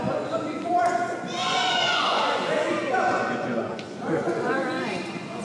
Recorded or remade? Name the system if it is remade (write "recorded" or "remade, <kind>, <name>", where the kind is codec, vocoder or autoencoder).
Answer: remade, vocoder, Vocos